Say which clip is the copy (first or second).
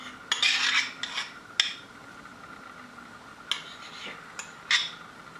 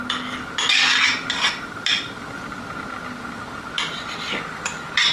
second